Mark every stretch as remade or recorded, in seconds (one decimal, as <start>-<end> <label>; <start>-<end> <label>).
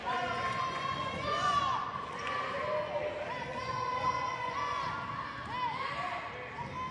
0.0-2.9 remade; 2.9-3.5 recorded; 3.5-4.8 remade; 4.8-6.9 recorded